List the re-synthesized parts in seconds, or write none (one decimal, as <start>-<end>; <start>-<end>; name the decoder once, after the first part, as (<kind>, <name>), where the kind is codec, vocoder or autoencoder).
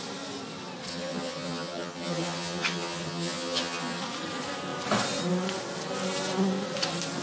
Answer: 0.9-4.0 (vocoder, HiFi-GAN)